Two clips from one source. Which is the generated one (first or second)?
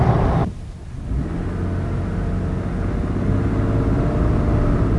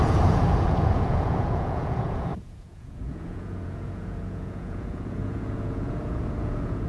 second